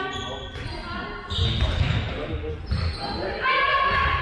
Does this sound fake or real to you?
real